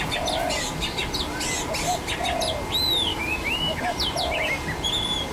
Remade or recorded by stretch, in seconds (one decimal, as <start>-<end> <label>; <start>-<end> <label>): 0.0-3.1 recorded; 3.1-3.8 remade; 3.8-5.3 recorded